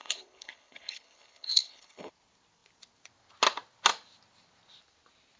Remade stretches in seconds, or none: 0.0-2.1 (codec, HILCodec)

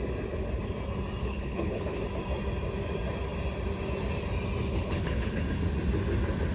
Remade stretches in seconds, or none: 1.2-2.0 (codec, HILCodec); 4.7-5.4

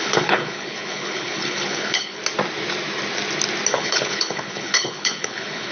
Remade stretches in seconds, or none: 0.0-2.2 (codec, HILCodec); 3.7-5.7